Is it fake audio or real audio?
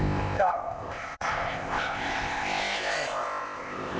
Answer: fake